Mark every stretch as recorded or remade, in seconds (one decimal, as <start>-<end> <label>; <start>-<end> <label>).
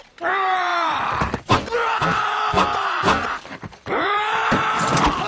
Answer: 0.0-4.4 remade; 4.4-5.3 recorded